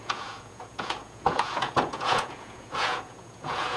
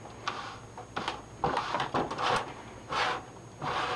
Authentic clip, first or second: second